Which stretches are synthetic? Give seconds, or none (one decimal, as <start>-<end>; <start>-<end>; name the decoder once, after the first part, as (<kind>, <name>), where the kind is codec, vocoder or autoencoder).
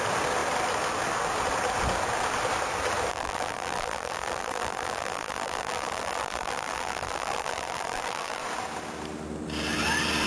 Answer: 3.1-8.4 (vocoder, BigVGAN v2)